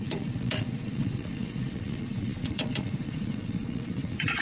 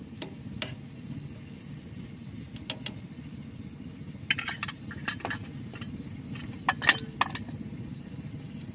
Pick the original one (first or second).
second